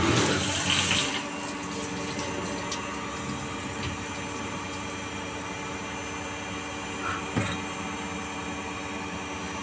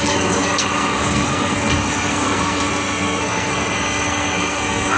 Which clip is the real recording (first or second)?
first